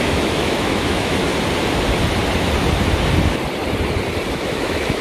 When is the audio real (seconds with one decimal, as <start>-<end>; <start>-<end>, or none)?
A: 1.3-4.3